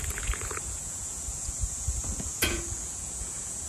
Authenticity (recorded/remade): remade